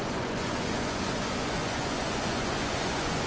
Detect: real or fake fake